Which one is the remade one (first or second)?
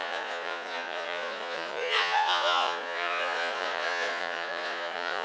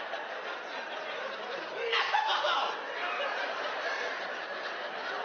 first